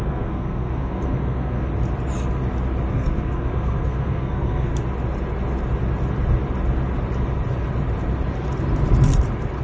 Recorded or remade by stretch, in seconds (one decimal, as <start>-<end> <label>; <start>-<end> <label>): 0.0-1.7 remade; 1.7-2.9 recorded; 2.9-4.7 remade; 4.7-9.6 recorded